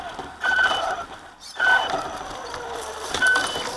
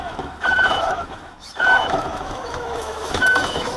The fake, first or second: second